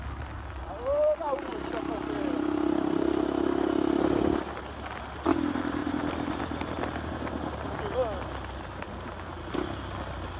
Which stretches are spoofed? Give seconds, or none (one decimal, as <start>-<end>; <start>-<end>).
none